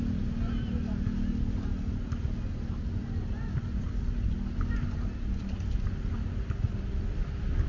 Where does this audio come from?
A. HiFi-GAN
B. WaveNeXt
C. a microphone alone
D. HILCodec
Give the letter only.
C